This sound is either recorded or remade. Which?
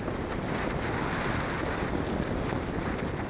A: recorded